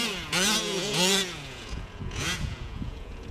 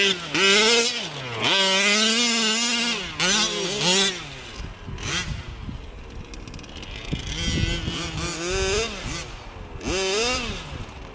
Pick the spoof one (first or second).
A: first